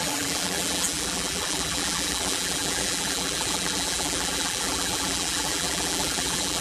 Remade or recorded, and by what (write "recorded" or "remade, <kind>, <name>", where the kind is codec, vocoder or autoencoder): remade, vocoder, BigVGAN v2